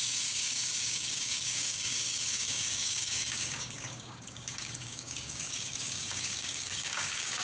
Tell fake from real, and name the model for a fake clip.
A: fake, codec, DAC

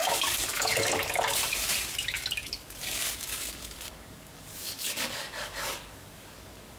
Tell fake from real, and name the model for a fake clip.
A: fake, codec, DAC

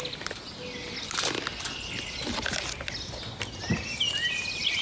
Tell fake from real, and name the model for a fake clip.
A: real